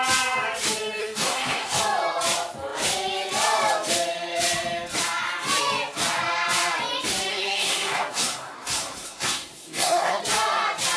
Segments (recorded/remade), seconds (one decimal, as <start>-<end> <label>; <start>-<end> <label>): 0.0-1.0 recorded; 1.0-1.8 remade; 1.8-7.3 recorded; 7.3-10.2 remade; 10.2-11.0 recorded